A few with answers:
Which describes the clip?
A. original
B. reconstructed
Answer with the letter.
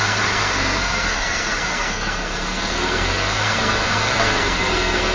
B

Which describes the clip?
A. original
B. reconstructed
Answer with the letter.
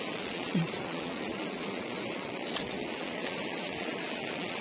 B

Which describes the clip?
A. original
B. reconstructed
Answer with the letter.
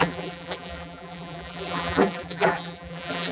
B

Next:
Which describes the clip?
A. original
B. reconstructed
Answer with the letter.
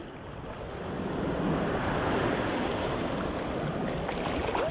B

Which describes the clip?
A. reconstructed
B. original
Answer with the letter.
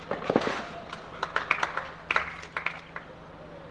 B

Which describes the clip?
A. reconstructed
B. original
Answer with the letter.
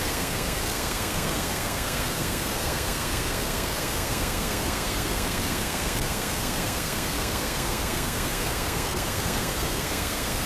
A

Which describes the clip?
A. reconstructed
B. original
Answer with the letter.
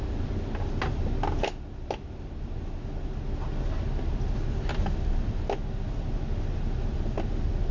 B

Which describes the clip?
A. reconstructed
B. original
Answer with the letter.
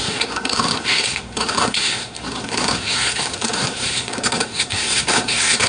A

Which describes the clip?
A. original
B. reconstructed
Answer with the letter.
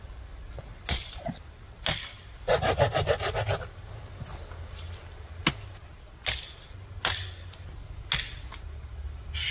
A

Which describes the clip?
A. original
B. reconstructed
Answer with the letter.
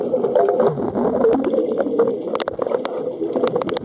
A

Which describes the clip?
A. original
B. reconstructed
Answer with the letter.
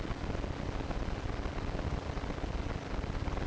A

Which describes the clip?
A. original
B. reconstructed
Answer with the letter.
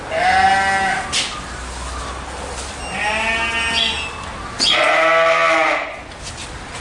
A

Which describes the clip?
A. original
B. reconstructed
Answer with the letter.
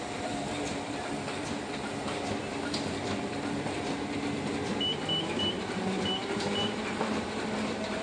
B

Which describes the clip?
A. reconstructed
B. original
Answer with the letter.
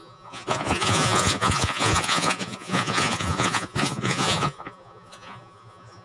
A